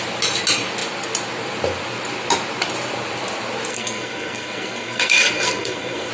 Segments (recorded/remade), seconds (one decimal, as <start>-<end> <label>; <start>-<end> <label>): 0.0-3.7 recorded; 3.7-6.1 remade